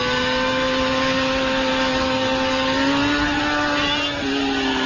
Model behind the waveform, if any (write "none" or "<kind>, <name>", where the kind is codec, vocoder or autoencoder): none